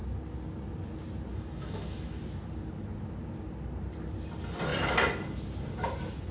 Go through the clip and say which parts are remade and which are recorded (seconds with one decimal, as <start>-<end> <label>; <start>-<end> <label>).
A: 0.0-1.3 recorded; 1.3-2.2 remade; 2.2-6.3 recorded